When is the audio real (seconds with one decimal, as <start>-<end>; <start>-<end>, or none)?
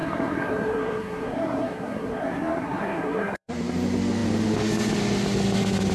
3.5-5.9